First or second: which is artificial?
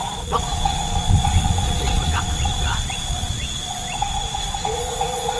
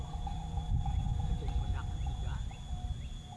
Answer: first